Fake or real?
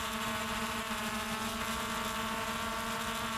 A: real